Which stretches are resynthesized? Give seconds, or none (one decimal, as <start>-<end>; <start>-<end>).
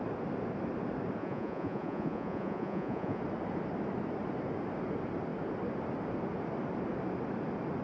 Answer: 1.2-3.2